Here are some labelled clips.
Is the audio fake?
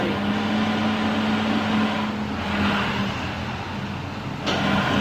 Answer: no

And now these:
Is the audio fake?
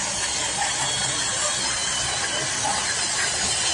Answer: no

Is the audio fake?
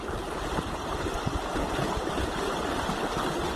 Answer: yes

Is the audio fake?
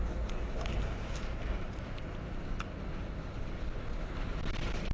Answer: no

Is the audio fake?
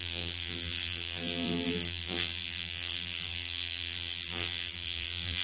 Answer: yes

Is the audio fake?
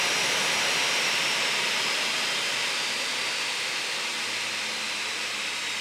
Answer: no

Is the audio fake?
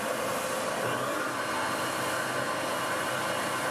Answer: no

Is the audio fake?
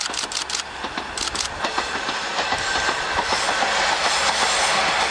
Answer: no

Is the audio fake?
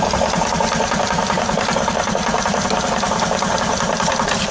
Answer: yes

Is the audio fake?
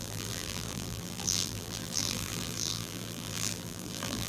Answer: yes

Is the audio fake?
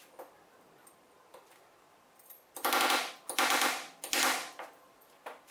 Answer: yes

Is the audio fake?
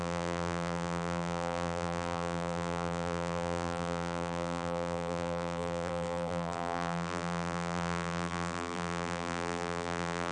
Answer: yes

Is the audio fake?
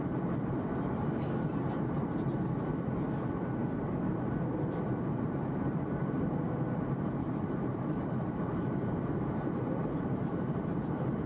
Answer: yes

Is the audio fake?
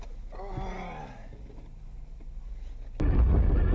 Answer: no